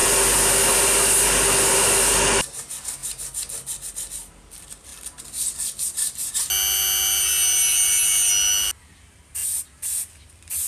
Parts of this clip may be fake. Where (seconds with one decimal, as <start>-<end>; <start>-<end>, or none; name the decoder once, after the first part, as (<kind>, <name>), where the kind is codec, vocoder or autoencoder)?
none